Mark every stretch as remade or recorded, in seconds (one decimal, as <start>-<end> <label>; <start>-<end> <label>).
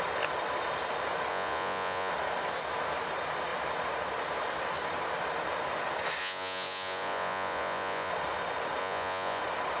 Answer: 0.0-1.3 recorded; 1.3-2.1 remade; 2.1-6.2 recorded; 6.2-8.1 remade; 8.1-8.8 recorded; 8.8-9.4 remade; 9.4-9.8 recorded